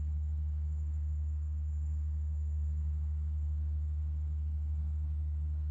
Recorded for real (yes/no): no